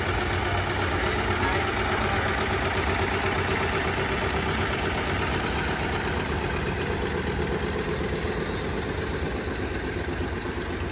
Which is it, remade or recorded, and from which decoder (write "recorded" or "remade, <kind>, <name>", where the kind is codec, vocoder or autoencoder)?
recorded